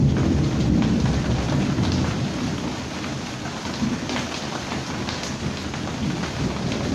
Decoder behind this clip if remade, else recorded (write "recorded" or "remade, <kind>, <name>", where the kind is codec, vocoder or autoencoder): recorded